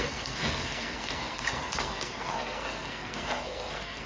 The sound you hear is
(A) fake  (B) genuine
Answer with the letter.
A